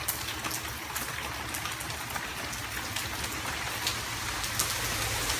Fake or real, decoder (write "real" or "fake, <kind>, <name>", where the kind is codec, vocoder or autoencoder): real